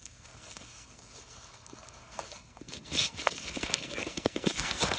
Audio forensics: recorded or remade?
remade